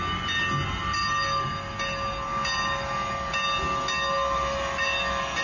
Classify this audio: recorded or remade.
recorded